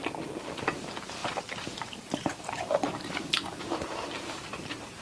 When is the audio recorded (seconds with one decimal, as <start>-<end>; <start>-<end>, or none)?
0.0-1.2; 4.1-5.0